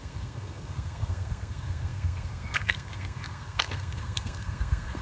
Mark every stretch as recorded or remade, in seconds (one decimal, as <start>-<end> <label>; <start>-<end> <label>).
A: 0.0-5.0 remade